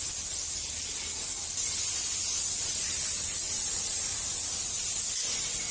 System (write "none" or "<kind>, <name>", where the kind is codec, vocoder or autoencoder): none